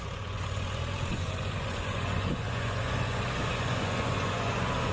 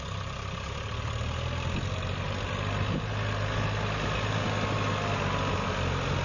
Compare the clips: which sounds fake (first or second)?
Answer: first